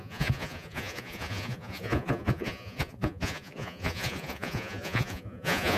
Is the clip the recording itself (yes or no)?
no